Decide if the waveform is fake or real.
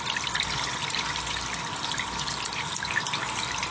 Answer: real